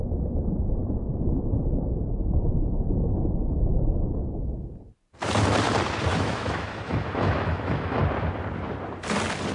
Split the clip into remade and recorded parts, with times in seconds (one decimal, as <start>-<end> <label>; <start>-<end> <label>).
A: 0.0-0.8 recorded; 0.8-4.4 remade; 4.4-6.1 recorded; 6.1-8.0 remade; 8.0-9.5 recorded